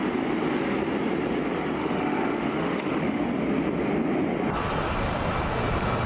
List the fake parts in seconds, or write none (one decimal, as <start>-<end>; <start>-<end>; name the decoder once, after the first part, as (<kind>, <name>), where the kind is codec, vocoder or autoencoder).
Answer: 1.8-3.2 (autoencoder, DAC-VAE)